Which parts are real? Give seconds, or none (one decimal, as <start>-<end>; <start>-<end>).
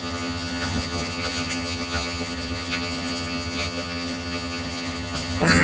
none